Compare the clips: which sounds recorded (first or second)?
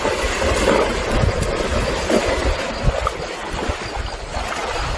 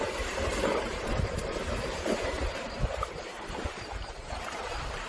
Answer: first